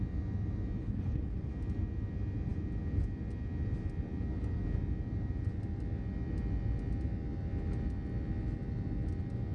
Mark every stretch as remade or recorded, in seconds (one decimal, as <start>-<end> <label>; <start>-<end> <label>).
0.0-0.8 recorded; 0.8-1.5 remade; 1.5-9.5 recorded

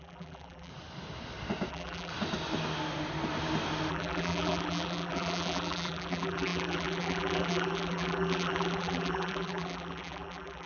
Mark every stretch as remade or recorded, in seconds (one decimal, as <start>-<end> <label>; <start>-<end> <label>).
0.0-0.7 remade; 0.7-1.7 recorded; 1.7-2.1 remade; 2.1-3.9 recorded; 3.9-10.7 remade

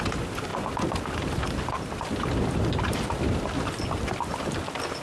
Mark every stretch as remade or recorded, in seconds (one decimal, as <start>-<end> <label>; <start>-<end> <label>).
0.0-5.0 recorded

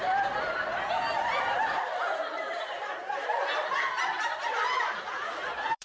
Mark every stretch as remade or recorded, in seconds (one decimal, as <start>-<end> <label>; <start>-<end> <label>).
0.0-0.7 remade; 0.7-1.3 recorded; 1.3-3.0 remade; 3.0-4.1 recorded; 4.1-5.8 remade

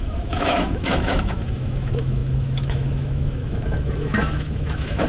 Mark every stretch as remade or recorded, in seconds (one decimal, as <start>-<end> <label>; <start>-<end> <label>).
0.0-5.1 remade

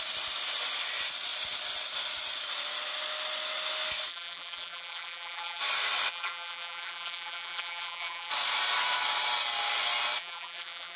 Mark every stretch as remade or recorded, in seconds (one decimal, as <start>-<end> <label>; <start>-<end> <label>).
0.0-4.1 recorded; 4.1-5.6 remade; 5.6-6.1 recorded; 6.1-8.3 remade; 8.3-10.2 recorded; 10.2-11.0 remade

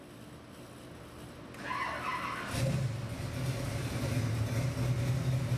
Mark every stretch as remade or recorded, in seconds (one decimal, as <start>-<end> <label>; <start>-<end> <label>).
0.0-5.6 recorded

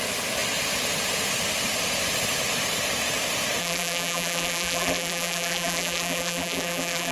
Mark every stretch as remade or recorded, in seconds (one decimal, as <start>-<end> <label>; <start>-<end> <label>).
0.0-3.6 recorded; 3.6-7.1 remade